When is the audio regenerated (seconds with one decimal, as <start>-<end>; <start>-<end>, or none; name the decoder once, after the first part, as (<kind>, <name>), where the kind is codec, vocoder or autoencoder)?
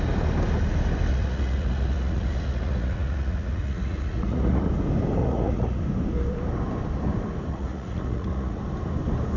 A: 1.1-4.7 (vocoder, Vocos); 5.2-5.8; 7.5-8.6